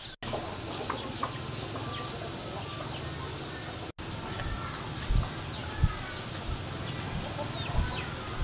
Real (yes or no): yes